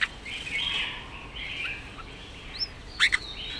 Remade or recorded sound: recorded